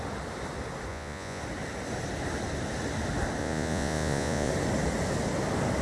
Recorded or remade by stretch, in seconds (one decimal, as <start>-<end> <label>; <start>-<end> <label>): 0.0-0.9 recorded; 0.9-1.4 remade; 1.4-3.4 recorded; 3.4-4.5 remade; 4.5-5.8 recorded